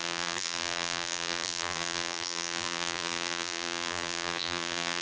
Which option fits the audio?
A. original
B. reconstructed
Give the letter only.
B